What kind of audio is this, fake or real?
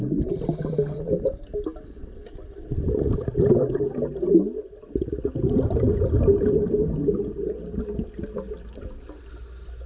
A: real